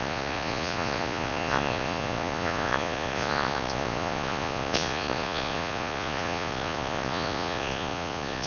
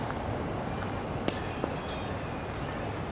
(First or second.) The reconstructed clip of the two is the first